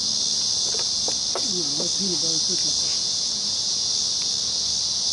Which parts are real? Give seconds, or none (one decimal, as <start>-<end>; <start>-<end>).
0.0-2.9; 3.9-5.1